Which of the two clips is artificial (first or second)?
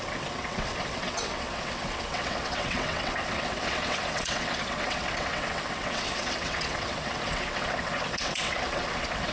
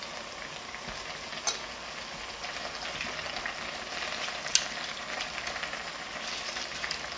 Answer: first